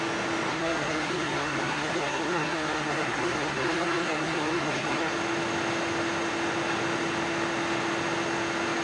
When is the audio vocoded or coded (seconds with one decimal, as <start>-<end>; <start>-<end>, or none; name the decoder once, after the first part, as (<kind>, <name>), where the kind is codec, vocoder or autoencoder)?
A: 0.5-5.1 (codec, SNAC)